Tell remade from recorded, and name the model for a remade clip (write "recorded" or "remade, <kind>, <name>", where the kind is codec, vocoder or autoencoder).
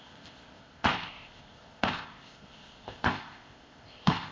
remade, codec, ZipCodec